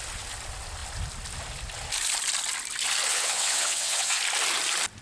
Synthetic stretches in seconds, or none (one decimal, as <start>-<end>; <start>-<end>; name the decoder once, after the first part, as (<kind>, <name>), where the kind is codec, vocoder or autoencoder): 3.1-4.2 (vocoder, WaveNeXt)